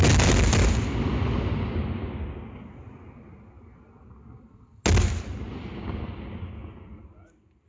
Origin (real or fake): real